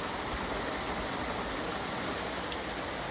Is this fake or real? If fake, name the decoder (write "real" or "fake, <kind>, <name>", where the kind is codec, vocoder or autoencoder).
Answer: real